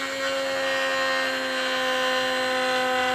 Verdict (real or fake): real